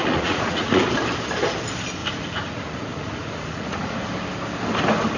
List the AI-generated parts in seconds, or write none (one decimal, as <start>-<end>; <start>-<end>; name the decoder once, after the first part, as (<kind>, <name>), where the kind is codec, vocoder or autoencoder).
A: 0.0-0.8 (vocoder, Vocos); 2.0-4.0